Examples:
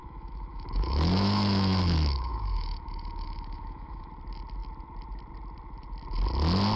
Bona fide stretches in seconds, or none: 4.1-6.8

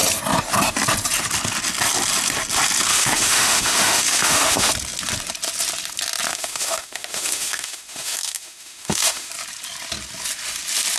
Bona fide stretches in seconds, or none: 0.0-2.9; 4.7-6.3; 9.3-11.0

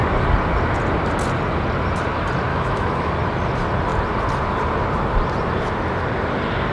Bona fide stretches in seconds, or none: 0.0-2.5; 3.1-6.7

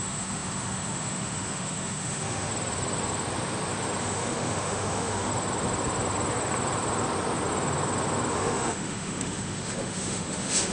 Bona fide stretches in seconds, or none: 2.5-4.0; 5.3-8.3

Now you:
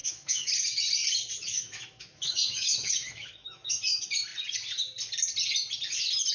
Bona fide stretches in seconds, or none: 0.5-1.4; 3.8-6.3

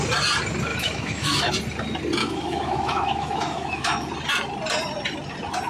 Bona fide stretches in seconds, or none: 0.0-0.7; 1.5-2.2; 4.1-5.7

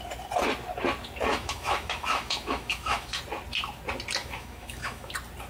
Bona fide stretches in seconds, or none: 0.0-1.3; 3.2-4.2; 5.1-5.5